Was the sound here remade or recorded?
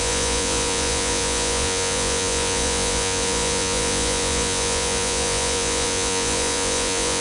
remade